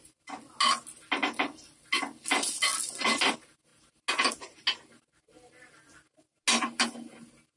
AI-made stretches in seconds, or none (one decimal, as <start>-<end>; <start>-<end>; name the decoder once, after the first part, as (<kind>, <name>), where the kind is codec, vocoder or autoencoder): none